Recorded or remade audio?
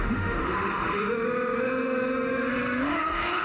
remade